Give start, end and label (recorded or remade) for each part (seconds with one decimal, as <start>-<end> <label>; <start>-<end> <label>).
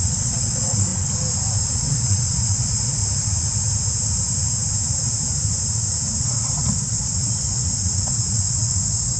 0.0-0.9 remade; 0.9-1.7 recorded; 1.7-3.0 remade; 3.0-6.2 recorded; 6.2-9.2 remade